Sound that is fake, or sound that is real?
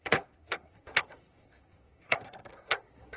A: fake